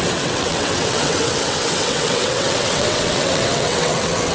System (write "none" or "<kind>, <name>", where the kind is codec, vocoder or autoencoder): vocoder, WaveNeXt